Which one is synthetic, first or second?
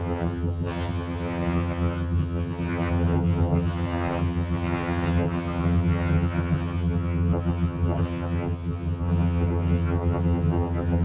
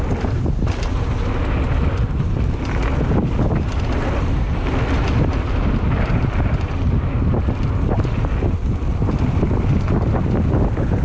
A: first